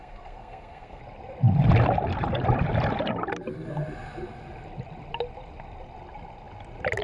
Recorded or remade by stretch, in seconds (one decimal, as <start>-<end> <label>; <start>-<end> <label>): 0.0-1.0 remade; 1.0-7.0 recorded